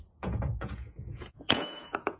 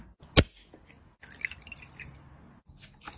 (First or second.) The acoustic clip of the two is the second